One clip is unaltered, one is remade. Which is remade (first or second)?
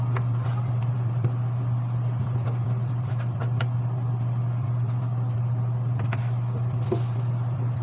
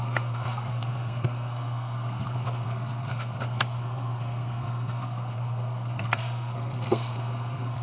second